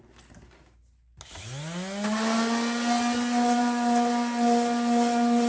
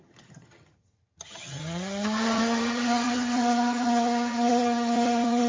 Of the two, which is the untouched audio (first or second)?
first